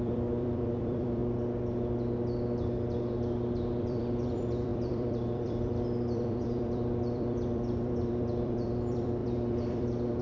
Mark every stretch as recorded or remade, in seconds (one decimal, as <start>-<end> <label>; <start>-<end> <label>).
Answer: 0.0-1.2 remade; 1.2-3.8 recorded; 3.8-10.2 remade